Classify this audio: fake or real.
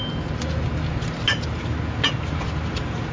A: real